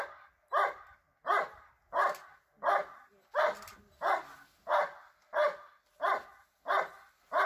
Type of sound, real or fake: real